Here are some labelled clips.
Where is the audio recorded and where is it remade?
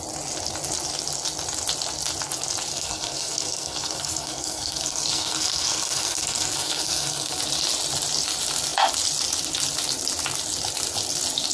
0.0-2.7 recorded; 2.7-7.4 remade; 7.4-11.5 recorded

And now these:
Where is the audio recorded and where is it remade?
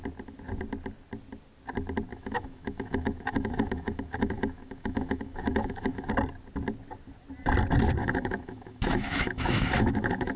0.0-2.1 recorded; 2.1-6.1 remade; 6.1-8.0 recorded; 8.0-10.4 remade